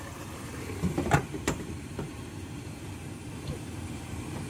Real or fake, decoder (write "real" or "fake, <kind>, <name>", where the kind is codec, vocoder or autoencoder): fake, vocoder, BigVGAN v2